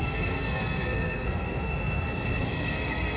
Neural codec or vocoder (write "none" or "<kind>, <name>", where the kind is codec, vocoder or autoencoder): codec, SNAC